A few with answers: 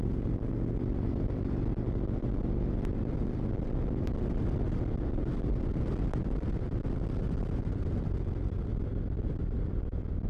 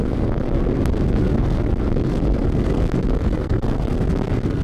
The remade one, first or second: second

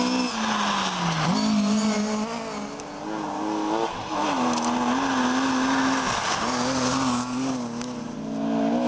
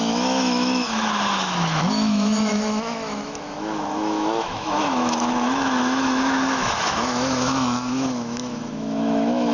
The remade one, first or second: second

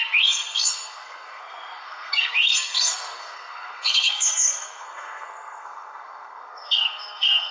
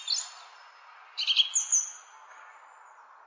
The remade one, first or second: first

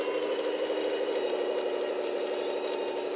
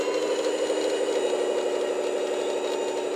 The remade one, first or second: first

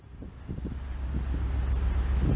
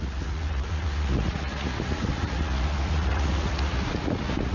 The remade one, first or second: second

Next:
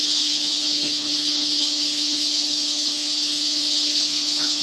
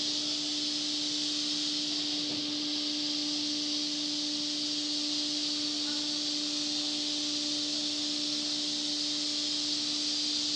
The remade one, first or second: first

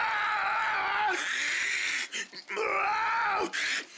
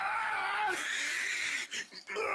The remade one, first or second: second